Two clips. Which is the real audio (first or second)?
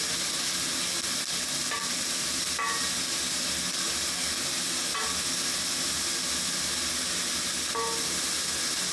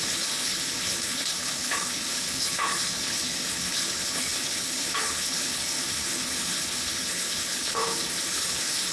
first